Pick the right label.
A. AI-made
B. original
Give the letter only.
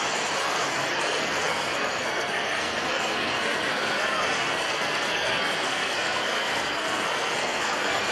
A